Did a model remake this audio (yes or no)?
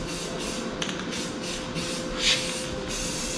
no